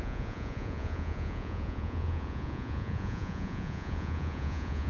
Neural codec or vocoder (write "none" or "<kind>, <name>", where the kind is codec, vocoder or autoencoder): vocoder, Vocos